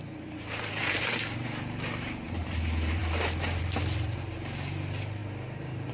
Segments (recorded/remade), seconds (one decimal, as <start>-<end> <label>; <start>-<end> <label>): 0.0-5.2 remade; 5.2-5.9 recorded